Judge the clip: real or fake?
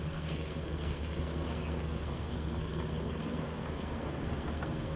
fake